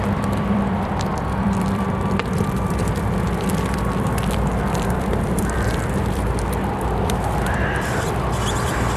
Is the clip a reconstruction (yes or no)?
yes